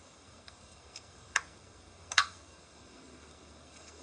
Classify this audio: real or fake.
fake